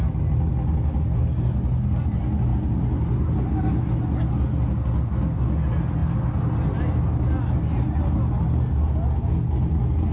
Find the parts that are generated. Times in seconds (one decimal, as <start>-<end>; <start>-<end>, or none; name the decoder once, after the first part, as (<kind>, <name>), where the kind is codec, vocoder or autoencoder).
none